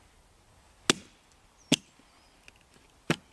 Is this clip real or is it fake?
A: real